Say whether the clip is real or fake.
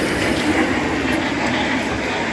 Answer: real